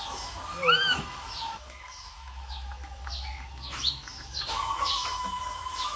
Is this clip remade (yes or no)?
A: yes